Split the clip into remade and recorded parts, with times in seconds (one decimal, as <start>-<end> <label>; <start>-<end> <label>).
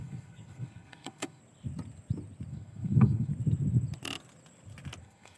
0.0-1.4 remade; 1.4-2.5 recorded; 2.5-3.3 remade; 3.3-5.0 recorded; 5.0-5.4 remade